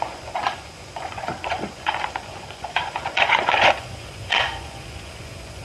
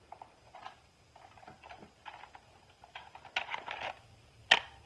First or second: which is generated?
first